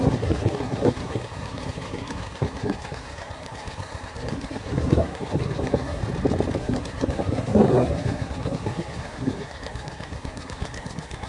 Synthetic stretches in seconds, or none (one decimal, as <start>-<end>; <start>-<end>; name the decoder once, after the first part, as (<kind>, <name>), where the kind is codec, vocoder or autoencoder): 0.0-6.0 (codec, SNAC); 6.6-11.3